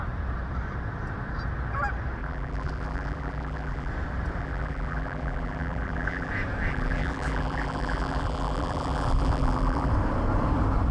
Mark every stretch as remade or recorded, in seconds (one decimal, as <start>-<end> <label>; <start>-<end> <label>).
0.0-2.2 recorded; 2.2-3.9 remade; 3.9-4.4 recorded; 4.4-6.3 remade; 6.3-6.7 recorded; 6.7-9.9 remade; 9.9-10.9 recorded